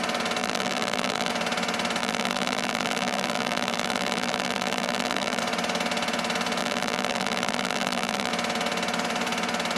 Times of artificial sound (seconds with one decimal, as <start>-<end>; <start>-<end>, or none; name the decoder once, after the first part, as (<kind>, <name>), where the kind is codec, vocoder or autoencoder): 0.4-1.3 (vocoder, BigVGAN v2); 2.0-5.4; 6.6-8.3